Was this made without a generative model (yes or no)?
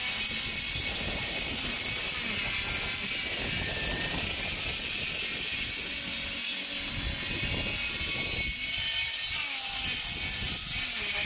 yes